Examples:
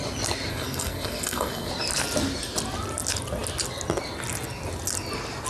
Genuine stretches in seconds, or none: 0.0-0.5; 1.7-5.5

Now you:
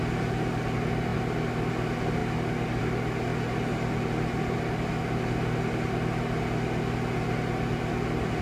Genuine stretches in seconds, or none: 0.0-8.4